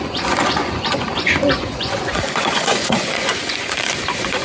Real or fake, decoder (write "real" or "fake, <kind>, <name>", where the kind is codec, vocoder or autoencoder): fake, vocoder, Vocos